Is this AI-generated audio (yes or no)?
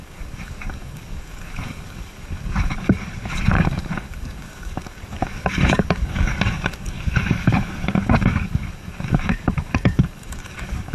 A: yes